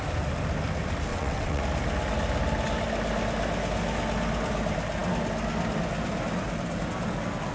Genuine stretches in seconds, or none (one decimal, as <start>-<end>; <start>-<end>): 0.0-1.1; 1.6-7.5